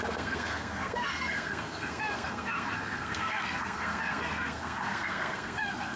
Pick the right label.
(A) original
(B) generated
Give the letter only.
B